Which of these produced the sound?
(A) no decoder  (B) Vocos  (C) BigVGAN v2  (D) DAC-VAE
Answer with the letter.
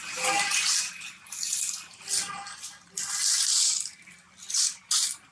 A